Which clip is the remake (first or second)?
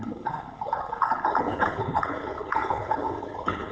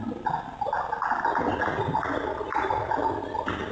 first